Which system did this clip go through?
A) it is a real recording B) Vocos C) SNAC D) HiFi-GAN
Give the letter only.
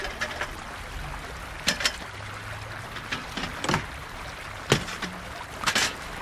A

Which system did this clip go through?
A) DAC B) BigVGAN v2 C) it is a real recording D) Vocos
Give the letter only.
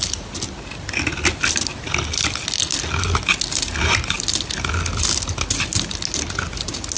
C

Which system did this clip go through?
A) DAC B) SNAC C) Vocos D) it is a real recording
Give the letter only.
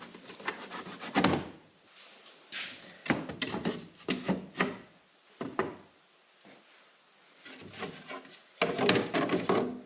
D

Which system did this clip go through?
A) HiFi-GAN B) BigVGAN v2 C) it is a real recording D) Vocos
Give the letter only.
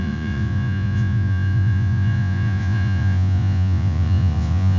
D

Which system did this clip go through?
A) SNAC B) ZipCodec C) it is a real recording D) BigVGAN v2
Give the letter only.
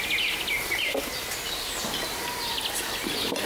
C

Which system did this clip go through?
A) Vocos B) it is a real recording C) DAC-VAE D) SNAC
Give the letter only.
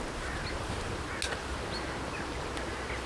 B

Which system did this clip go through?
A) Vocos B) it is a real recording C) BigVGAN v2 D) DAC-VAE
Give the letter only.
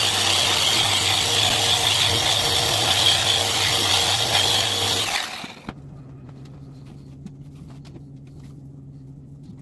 B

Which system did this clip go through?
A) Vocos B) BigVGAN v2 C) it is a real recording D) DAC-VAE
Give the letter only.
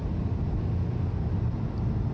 C